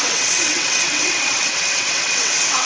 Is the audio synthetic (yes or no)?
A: yes